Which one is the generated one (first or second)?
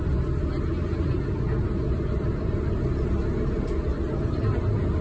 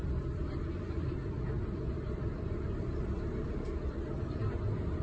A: second